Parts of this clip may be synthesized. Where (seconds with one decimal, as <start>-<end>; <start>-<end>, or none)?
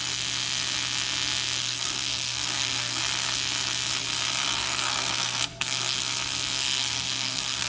1.6-3.0; 4.4-6.0; 6.6-7.7